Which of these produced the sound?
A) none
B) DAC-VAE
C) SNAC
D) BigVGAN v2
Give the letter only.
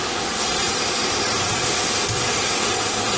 A